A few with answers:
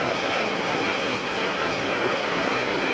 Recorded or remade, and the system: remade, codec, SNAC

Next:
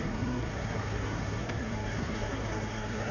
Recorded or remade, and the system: remade, codec, SNAC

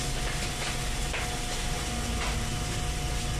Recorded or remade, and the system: recorded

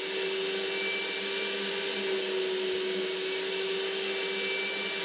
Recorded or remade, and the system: recorded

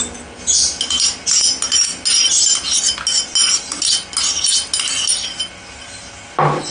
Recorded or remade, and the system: recorded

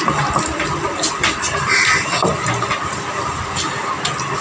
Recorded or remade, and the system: recorded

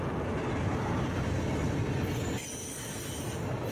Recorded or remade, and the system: recorded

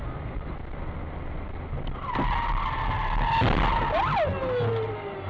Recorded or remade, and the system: recorded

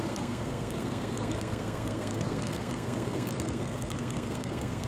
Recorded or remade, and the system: remade, codec, SNAC